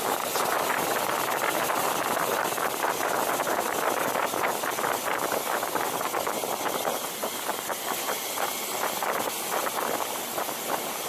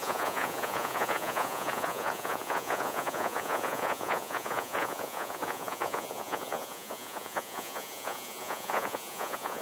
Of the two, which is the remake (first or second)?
second